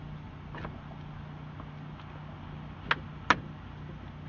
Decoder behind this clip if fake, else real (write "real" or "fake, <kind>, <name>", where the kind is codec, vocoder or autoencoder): real